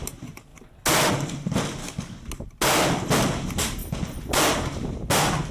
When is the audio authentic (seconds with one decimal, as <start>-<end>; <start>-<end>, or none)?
0.0-1.8; 2.3-5.5